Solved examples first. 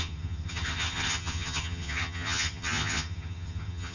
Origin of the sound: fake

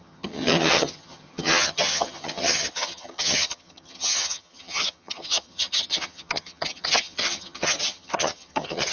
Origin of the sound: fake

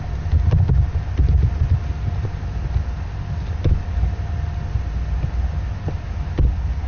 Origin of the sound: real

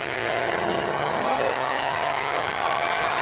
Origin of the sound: fake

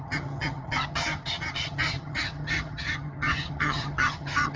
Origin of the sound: fake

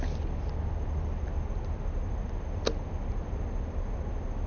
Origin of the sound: real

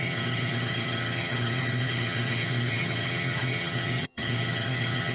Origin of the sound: fake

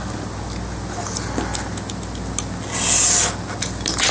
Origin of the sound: real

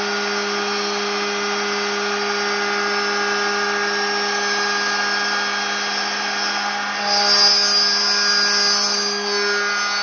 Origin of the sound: real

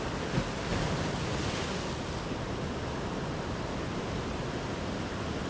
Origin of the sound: real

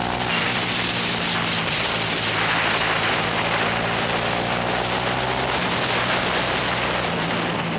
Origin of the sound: real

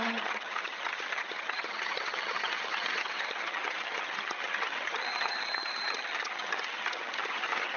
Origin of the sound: fake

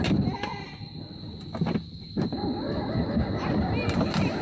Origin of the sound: real